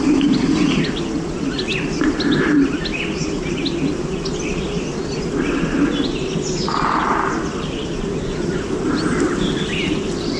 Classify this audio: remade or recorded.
recorded